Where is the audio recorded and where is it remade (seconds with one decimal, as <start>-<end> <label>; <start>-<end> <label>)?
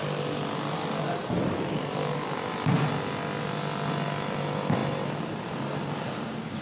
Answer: 0.0-1.7 recorded; 1.7-2.4 remade; 2.4-6.6 recorded